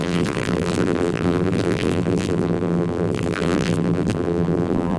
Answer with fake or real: fake